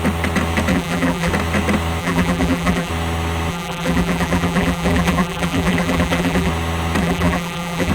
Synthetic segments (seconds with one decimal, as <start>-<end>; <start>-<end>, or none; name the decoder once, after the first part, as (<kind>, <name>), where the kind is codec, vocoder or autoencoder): 0.7-1.3 (vocoder, BigVGAN v2); 2.0-2.9; 3.5-6.5; 7.0-7.9